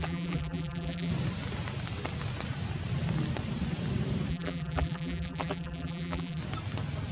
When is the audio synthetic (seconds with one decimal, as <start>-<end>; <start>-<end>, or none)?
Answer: 0.0-1.1; 4.3-6.4